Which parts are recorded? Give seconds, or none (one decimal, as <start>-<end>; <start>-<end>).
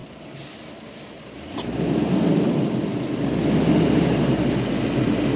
0.0-5.4